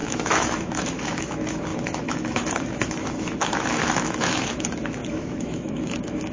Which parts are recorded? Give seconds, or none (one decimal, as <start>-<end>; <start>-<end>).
none